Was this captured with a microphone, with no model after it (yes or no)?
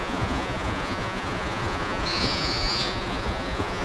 no